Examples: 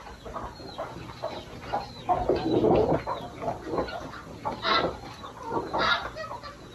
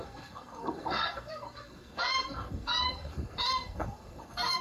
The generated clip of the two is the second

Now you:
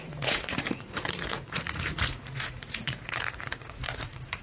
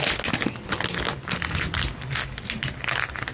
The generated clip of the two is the first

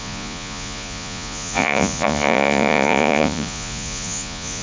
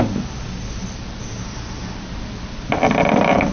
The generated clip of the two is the first